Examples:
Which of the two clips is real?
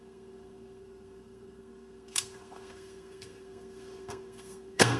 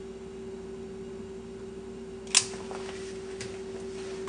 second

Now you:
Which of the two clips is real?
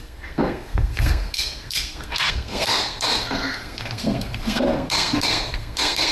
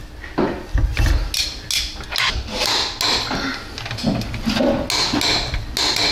second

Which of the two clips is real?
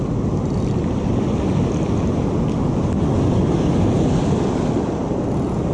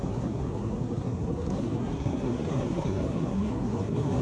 first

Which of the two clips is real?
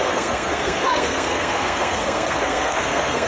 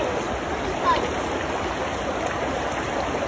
second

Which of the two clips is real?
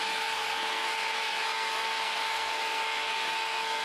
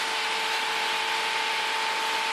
second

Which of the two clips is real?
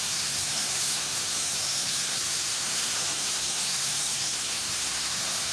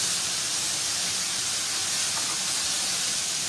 second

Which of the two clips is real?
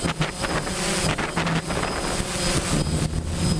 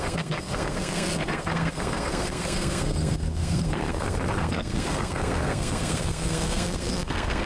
first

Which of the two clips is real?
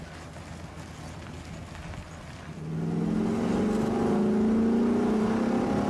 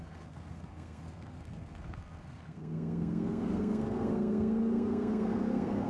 first